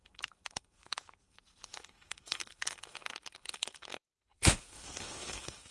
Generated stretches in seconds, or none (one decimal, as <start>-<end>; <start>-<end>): 0.0-5.7